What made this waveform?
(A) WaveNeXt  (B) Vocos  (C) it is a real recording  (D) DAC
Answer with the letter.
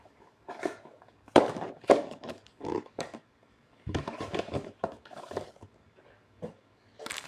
D